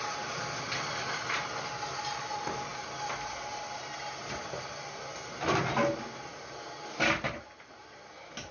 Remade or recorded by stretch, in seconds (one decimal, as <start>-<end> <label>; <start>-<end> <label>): 0.0-8.5 recorded